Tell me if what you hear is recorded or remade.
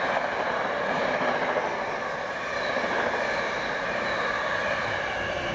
recorded